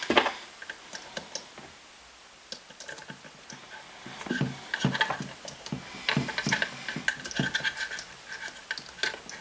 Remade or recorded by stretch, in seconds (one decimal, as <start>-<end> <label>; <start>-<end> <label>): 0.0-9.4 recorded